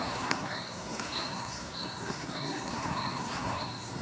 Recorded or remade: remade